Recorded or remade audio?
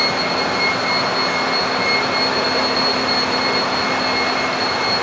recorded